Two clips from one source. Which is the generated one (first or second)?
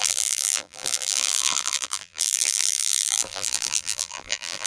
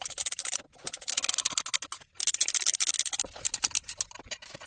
first